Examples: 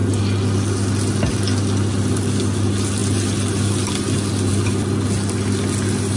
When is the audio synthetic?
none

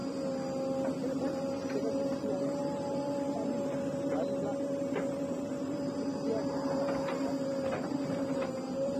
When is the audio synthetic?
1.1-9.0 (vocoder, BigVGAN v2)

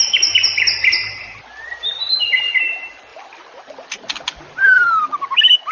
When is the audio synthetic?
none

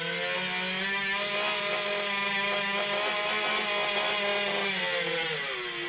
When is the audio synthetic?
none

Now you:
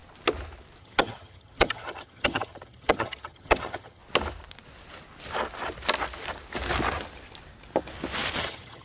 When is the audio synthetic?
0.8-4.0 (vocoder, HiFi-GAN); 8.4-8.8

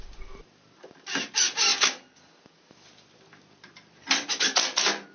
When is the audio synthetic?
none